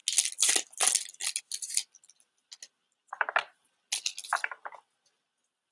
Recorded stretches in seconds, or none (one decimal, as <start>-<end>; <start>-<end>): 0.0-5.7

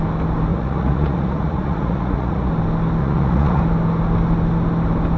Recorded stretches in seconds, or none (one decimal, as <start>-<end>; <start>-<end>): 0.0-0.5; 2.5-3.0; 3.6-5.2

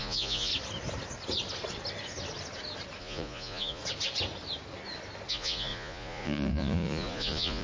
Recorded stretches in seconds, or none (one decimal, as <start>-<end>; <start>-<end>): 0.5-3.0; 3.8-5.3

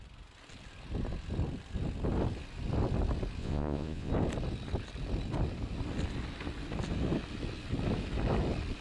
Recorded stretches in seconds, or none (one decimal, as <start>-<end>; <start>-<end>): 0.0-3.4; 4.1-8.8

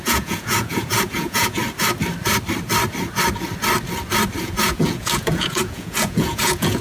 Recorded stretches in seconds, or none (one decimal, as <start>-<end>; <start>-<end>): 1.6-4.4

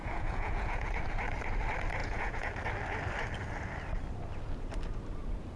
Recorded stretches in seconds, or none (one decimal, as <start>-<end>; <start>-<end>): 1.0-2.0; 2.5-5.6